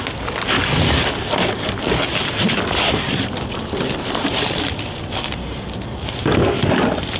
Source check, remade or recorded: recorded